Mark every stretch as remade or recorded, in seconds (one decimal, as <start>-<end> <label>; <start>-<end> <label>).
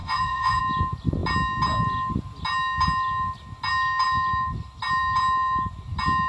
0.0-0.6 remade; 0.6-6.3 recorded